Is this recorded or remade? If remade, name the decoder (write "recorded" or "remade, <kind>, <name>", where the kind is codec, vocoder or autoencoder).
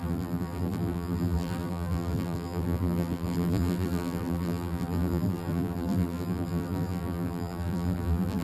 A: remade, vocoder, BigVGAN v2